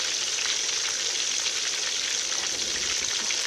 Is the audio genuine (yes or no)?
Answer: yes